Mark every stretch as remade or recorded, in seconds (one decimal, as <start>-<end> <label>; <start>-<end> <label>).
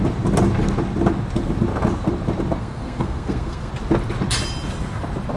0.0-2.6 recorded; 2.6-3.7 remade; 3.7-5.4 recorded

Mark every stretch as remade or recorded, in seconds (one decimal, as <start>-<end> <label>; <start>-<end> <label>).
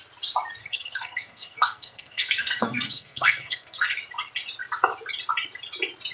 0.0-0.6 recorded; 0.6-3.9 remade; 3.9-6.1 recorded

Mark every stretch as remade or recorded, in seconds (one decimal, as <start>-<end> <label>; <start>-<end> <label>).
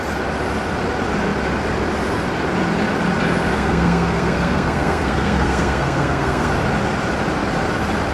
0.0-3.5 recorded; 3.5-6.5 remade; 6.5-8.1 recorded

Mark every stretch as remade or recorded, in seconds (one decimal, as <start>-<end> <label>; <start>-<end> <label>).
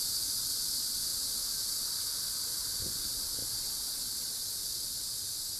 0.0-5.6 recorded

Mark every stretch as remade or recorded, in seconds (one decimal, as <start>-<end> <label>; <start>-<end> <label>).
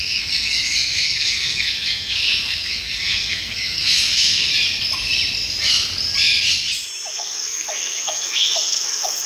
0.0-4.5 remade; 4.5-7.1 recorded; 7.1-9.3 remade